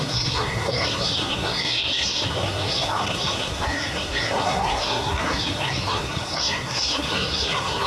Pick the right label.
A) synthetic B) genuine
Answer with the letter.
A